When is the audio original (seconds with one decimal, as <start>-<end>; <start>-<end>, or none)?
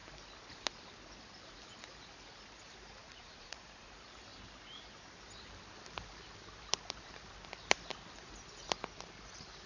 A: 0.0-3.0; 3.9-9.7